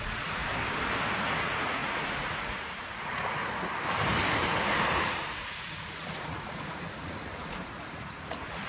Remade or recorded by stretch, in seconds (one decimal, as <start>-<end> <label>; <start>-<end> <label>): 0.0-0.4 remade; 0.4-1.4 recorded; 1.4-3.4 remade; 3.4-5.0 recorded; 5.0-8.7 remade